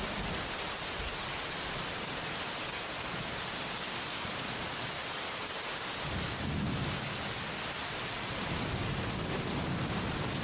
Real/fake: real